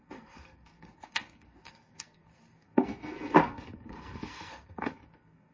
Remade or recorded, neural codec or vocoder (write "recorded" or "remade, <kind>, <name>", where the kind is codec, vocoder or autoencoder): remade, codec, SNAC